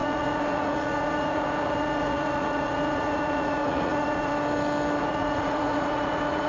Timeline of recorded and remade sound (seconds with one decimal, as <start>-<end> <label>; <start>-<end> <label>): 0.0-4.3 remade; 4.3-5.0 recorded; 5.0-6.5 remade